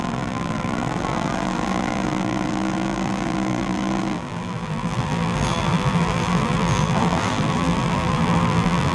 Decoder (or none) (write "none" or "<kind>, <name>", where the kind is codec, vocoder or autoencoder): vocoder, BigVGAN v2